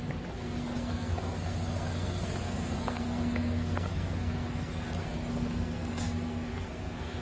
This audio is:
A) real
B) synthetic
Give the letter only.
B